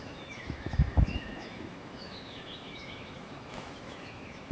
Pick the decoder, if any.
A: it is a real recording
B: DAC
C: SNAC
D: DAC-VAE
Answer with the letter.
D